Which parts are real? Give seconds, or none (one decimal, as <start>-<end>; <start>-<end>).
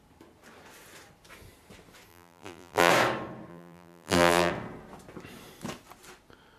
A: 0.0-2.1; 2.9-3.5; 4.5-6.6